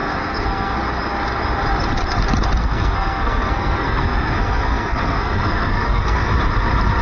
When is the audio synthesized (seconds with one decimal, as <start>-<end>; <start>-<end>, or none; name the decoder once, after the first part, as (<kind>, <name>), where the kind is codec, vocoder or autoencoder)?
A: 0.0-0.8 (codec, SNAC); 2.6-6.3